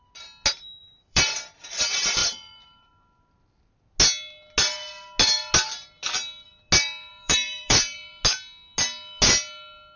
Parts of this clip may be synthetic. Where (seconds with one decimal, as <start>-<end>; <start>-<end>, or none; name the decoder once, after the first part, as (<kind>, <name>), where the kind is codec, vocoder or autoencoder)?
0.8-1.4 (vocoder, BigVGAN v2); 2.2-2.9; 7.1-8.2